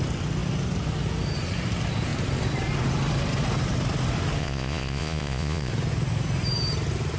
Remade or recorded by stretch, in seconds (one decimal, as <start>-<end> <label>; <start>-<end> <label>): 0.0-4.4 recorded; 4.4-5.7 remade; 5.7-7.2 recorded